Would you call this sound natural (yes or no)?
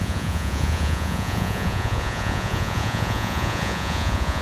no